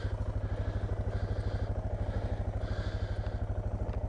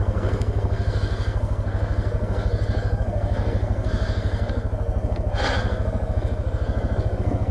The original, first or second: first